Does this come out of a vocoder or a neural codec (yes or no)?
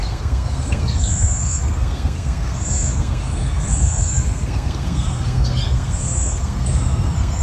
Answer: yes